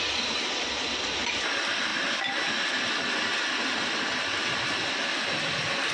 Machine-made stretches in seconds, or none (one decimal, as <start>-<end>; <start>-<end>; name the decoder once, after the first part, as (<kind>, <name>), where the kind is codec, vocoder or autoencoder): 0.0-1.9 (vocoder, BigVGAN v2); 4.9-5.9